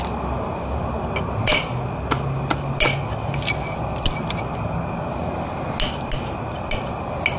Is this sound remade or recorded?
recorded